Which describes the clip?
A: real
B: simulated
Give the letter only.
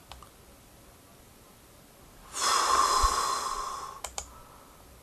A